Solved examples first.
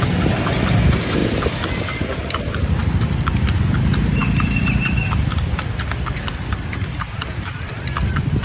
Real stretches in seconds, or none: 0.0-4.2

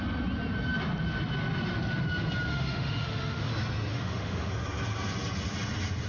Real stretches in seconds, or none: 0.0-2.5; 3.5-3.9; 4.5-6.1

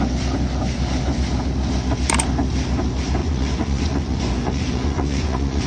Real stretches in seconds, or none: 0.0-3.2

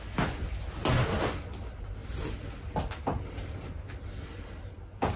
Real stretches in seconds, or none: 0.0-5.2